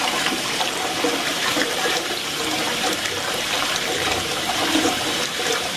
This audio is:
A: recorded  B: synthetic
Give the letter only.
B